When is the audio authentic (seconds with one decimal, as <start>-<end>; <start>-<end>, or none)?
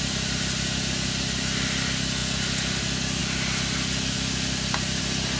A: 0.0-5.4